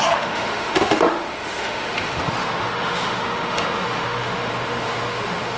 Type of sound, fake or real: fake